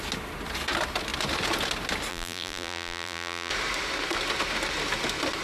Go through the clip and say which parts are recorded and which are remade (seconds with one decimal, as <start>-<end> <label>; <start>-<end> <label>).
0.0-2.1 recorded; 2.1-3.5 remade; 3.5-5.4 recorded